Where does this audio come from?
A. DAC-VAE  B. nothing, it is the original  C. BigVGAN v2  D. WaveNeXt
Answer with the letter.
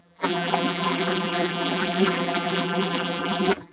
C